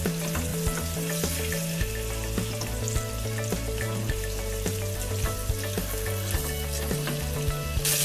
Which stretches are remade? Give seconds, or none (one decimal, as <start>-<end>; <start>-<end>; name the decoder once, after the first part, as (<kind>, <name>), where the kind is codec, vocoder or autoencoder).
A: none